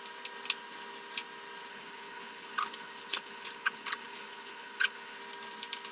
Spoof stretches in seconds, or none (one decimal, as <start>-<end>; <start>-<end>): 1.7-5.2